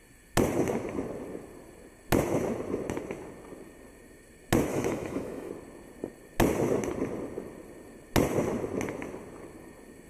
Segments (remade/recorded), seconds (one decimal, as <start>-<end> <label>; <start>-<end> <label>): 0.0-4.7 recorded; 4.7-5.5 remade; 5.5-10.1 recorded